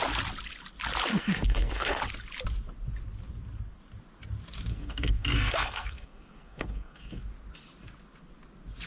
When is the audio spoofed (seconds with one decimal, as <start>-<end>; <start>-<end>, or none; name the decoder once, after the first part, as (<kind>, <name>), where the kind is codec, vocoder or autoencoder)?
1.1-2.0 (codec, SNAC); 4.7-7.2